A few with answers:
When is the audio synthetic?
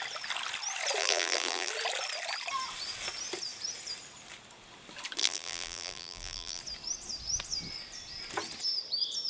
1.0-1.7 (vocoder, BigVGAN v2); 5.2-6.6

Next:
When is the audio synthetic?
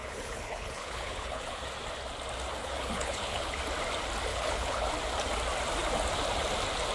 0.0-1.6 (codec, HILCodec); 2.6-3.6; 4.3-4.9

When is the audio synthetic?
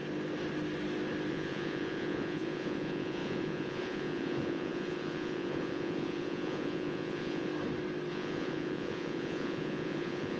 1.3-7.5 (vocoder, Vocos); 8.1-10.4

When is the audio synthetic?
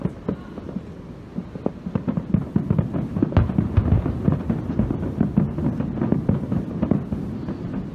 none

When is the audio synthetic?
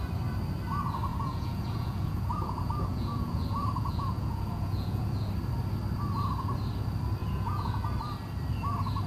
1.1-5.3 (vocoder, Vocos); 7.2-7.8